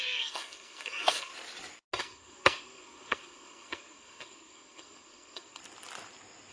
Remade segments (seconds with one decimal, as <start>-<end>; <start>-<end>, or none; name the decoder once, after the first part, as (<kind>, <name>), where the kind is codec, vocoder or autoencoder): 0.0-1.3 (codec, SNAC); 2.0-5.6